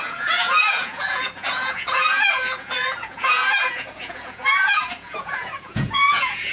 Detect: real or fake fake